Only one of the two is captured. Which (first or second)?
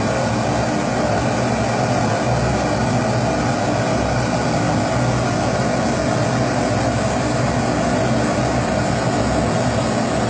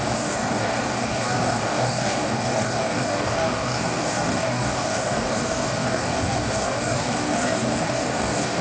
first